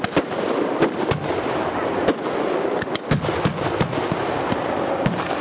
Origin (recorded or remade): recorded